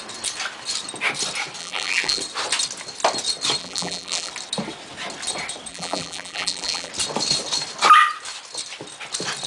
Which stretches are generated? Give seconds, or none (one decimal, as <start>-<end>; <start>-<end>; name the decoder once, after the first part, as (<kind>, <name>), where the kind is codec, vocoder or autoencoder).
1.6-2.2 (vocoder, BigVGAN v2); 3.6-4.3; 5.7-6.9